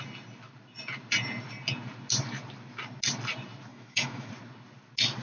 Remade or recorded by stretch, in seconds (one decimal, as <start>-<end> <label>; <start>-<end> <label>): 0.0-3.7 recorded; 3.7-4.3 remade; 4.3-5.2 recorded